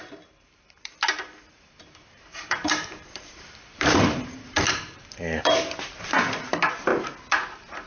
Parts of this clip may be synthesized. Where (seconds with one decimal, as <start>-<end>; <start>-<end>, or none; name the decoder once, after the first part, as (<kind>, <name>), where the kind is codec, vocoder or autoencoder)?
0.0-6.9 (vocoder, BigVGAN v2)

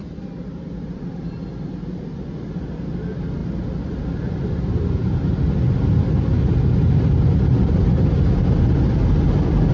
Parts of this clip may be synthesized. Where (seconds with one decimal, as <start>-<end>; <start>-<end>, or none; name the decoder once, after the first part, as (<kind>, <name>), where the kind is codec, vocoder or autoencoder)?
none

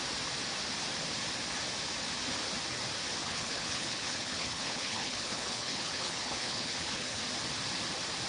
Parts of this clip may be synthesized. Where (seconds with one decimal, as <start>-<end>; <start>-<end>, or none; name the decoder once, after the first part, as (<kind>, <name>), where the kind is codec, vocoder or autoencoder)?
3.2-7.2 (codec, HILCodec)

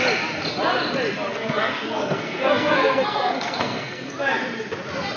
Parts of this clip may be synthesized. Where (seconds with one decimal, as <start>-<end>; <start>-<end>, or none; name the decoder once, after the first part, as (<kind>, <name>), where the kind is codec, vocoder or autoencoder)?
1.3-4.1 (codec, SNAC)

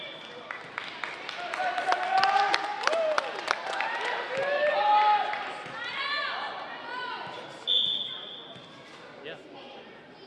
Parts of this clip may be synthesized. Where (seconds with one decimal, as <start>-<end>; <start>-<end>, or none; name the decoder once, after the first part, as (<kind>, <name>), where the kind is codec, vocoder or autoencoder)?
none